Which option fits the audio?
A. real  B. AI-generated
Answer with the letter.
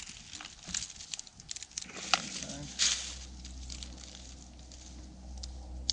A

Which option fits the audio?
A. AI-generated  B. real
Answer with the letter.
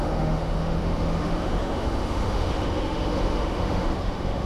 A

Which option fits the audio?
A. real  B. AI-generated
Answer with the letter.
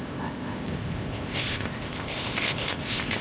B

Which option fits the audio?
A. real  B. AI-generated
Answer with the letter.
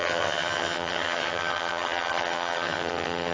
B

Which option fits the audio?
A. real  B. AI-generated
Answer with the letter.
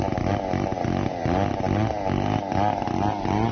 A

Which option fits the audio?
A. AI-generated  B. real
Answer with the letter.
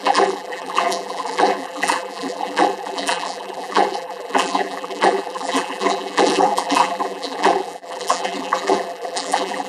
A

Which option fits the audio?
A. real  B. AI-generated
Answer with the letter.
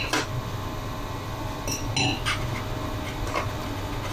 A